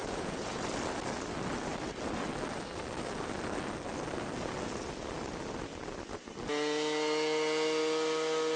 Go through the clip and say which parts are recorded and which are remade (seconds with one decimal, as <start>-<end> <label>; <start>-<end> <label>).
0.0-0.6 remade; 0.6-8.6 recorded